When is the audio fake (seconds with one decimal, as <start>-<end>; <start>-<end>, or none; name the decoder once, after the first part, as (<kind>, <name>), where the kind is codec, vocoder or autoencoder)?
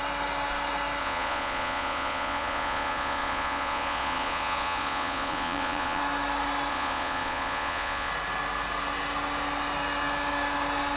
1.0-6.0 (vocoder, Vocos); 6.7-8.1